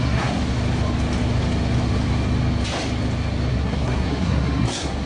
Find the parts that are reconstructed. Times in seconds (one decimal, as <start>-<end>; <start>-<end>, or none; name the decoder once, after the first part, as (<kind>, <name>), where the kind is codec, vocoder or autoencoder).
0.0-0.4 (codec, SNAC); 3.5-5.1